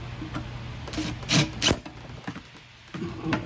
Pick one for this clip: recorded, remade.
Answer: recorded